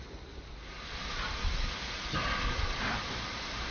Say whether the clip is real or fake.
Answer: real